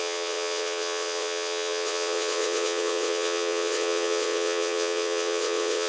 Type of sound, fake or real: fake